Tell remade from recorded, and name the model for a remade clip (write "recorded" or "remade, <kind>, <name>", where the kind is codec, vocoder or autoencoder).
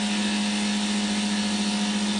recorded